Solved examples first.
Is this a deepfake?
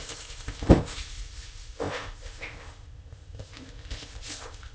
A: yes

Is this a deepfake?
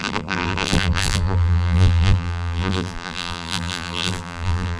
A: yes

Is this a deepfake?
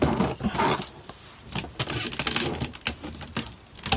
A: no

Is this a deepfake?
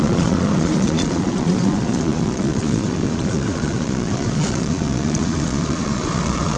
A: yes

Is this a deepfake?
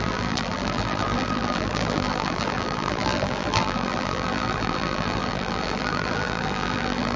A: yes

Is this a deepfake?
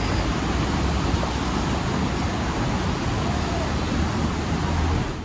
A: no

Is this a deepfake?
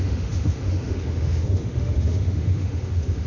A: yes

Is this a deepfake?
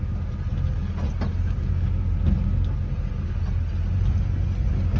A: no